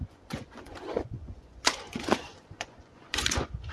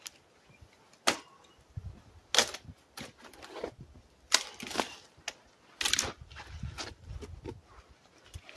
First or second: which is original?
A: second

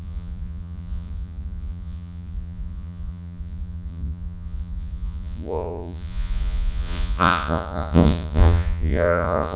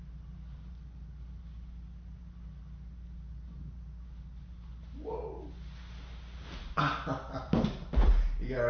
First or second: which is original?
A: second